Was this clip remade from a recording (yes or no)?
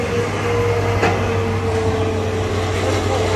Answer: no